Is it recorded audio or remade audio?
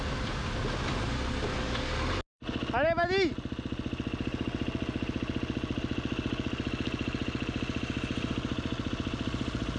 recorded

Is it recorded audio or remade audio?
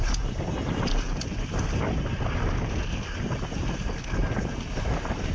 recorded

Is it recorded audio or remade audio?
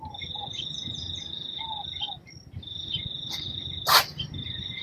recorded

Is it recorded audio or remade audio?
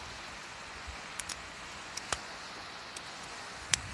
remade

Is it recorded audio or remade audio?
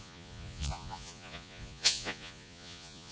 remade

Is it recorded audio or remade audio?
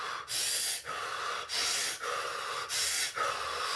recorded